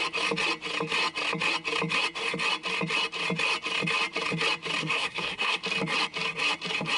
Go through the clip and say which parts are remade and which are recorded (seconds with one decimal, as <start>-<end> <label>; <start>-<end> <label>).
0.0-4.8 recorded; 4.8-5.6 remade; 5.6-7.0 recorded